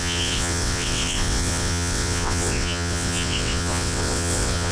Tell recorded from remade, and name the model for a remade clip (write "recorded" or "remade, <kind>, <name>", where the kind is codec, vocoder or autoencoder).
remade, vocoder, WaveNeXt